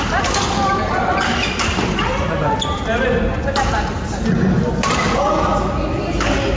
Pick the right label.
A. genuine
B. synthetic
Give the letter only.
A